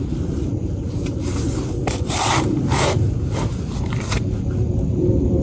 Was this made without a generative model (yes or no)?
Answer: no